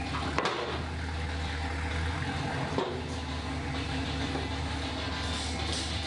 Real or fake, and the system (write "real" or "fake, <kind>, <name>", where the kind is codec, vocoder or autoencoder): real